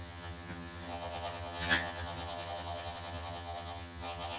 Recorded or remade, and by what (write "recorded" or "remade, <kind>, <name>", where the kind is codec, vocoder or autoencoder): remade, vocoder, HiFi-GAN